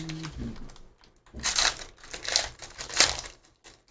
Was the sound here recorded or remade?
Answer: recorded